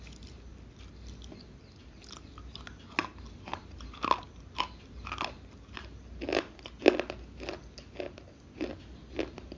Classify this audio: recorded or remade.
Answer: recorded